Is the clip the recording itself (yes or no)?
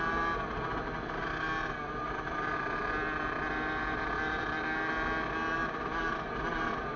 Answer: yes